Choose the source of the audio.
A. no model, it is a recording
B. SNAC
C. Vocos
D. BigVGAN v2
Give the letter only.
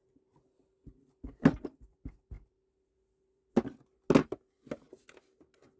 A